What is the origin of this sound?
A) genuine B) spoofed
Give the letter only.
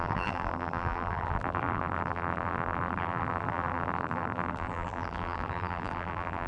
B